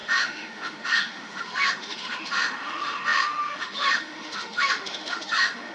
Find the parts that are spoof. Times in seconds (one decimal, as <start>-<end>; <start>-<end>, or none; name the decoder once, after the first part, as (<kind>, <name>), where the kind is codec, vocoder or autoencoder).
0.0-5.7 (autoencoder, DAC-VAE)